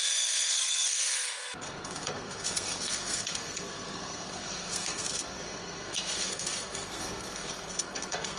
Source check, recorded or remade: remade